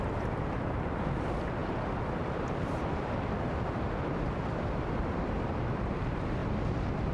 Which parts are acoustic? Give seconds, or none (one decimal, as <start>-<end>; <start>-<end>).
6.4-7.1